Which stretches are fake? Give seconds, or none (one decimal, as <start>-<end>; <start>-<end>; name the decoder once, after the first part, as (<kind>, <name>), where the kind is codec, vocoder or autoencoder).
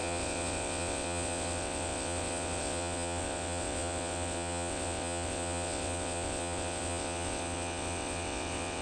0.0-8.8 (vocoder, WaveNeXt)